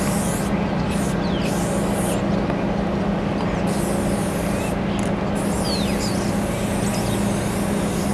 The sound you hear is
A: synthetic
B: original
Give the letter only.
B